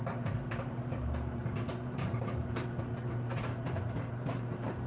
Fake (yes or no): yes